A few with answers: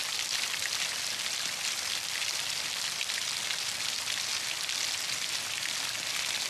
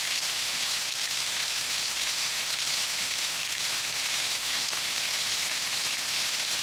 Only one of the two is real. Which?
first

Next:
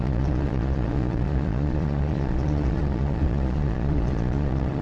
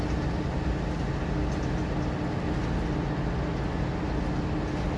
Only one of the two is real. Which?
second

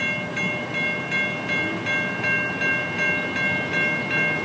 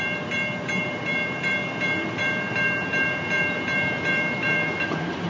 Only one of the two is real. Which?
first